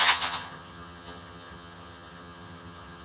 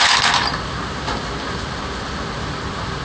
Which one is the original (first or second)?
second